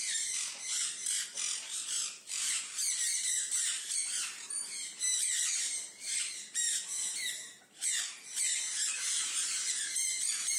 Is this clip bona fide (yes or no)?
no